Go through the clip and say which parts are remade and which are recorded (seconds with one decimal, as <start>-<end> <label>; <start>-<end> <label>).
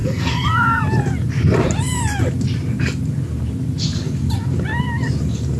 0.0-0.8 remade; 0.8-5.6 recorded